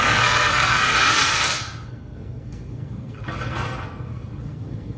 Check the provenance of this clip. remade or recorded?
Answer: remade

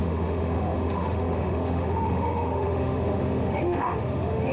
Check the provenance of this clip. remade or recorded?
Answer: remade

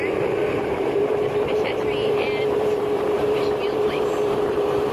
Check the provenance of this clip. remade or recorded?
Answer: remade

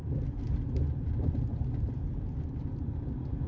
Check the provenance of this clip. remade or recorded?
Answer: recorded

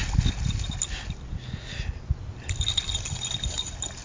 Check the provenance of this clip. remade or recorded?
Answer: recorded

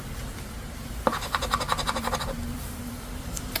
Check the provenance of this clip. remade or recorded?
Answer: remade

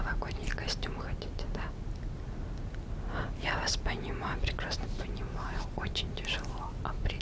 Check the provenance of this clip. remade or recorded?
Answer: recorded